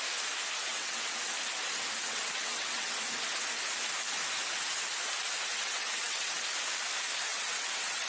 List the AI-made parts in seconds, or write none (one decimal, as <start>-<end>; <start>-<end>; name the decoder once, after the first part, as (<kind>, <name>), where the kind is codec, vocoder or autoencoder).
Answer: 0.7-1.3 (vocoder, WaveNeXt); 2.0-3.0; 5.5-6.4; 7.3-8.1